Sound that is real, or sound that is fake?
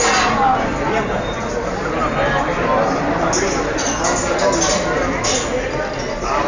real